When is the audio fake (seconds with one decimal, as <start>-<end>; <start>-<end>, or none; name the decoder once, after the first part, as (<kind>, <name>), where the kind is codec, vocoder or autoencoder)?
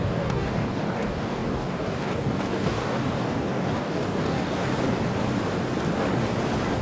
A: 0.0-4.7 (codec, DAC)